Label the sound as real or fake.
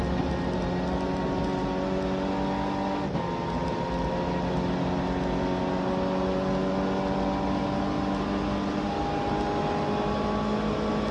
real